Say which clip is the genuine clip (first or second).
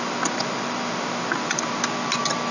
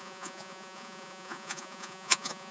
first